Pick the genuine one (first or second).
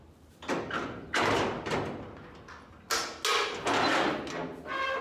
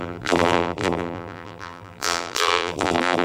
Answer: first